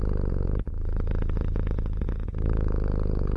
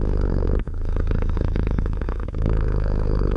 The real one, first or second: first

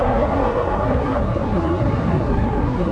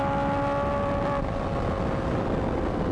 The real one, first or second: second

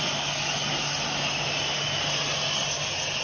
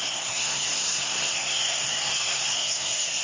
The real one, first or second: first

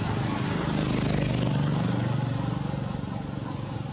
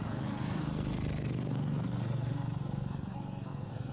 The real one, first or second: first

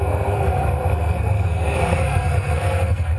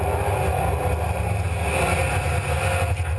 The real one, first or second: second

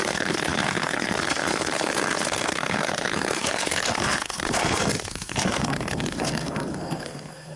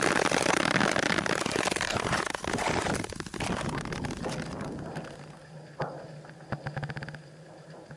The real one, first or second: second